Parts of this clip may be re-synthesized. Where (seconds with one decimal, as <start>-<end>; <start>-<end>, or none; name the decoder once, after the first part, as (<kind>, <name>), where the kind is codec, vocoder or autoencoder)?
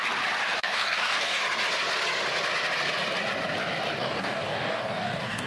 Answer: 0.6-1.4 (codec, DAC); 4.0-5.5